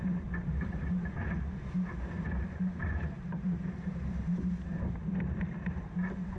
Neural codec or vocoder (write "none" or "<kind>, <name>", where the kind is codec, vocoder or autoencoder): vocoder, BigVGAN v2